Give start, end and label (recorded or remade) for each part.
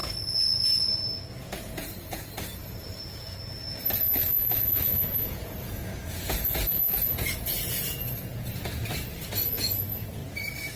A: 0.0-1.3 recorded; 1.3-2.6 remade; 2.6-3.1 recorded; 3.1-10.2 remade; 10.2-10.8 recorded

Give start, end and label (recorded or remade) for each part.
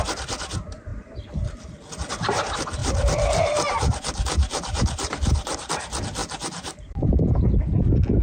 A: 0.0-2.8 recorded; 2.8-5.7 remade; 5.7-6.2 recorded; 6.2-7.4 remade; 7.4-8.2 recorded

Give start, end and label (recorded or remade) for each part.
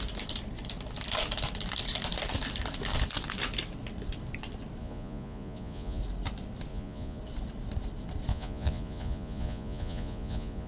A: 0.0-4.8 recorded; 4.8-6.0 remade; 6.0-6.7 recorded; 6.7-7.2 remade; 7.2-8.3 recorded; 8.3-10.7 remade